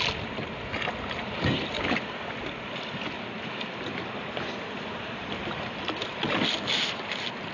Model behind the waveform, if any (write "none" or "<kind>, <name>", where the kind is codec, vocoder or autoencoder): none